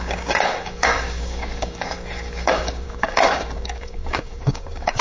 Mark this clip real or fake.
fake